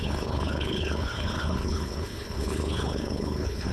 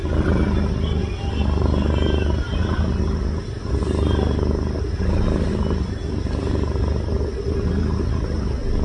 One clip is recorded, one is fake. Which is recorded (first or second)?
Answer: second